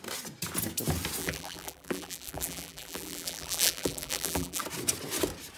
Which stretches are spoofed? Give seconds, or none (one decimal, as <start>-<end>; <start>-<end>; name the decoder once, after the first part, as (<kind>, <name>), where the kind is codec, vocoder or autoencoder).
1.2-4.6 (vocoder, BigVGAN v2)